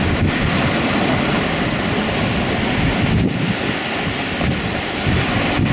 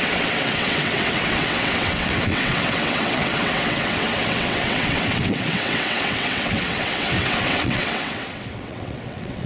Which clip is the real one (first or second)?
first